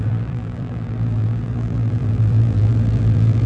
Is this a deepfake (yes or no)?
yes